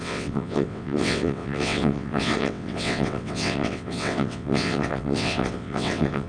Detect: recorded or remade remade